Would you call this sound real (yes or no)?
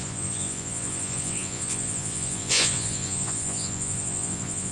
no